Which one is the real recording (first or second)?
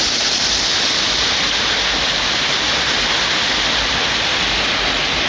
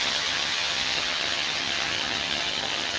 first